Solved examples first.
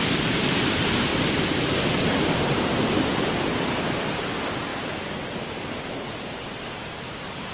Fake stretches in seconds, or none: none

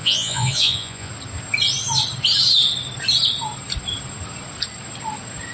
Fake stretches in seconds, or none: 0.0-1.1 (vocoder, Vocos)